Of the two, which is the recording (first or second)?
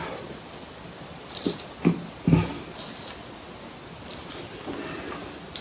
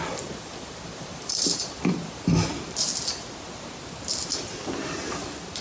first